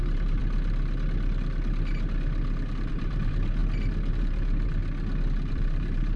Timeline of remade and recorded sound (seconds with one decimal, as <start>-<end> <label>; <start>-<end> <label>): 0.0-0.4 remade; 0.4-2.9 recorded; 2.9-3.6 remade; 3.6-4.1 recorded; 4.1-4.8 remade; 4.8-5.5 recorded; 5.5-6.2 remade